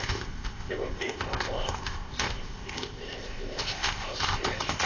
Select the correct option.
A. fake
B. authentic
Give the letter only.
A